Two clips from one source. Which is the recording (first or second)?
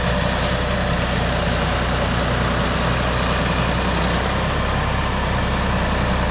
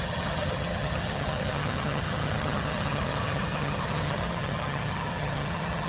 first